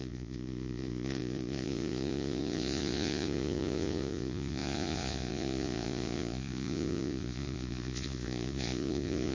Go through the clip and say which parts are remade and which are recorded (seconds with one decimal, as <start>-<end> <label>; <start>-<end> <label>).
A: 0.0-9.3 remade